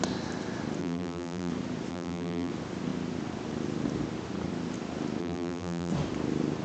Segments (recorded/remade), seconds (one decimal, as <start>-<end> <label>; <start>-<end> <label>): 0.0-0.8 recorded; 0.8-1.5 remade; 1.5-1.9 recorded; 1.9-2.5 remade; 2.5-5.2 recorded; 5.2-5.9 remade; 5.9-6.6 recorded